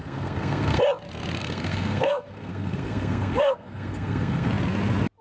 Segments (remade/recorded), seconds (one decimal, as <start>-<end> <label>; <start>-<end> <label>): 0.0-0.8 remade; 0.8-1.4 recorded; 1.4-4.5 remade; 4.5-5.2 recorded